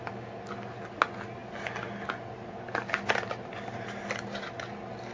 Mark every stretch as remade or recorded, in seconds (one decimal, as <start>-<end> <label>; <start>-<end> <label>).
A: 0.0-5.1 recorded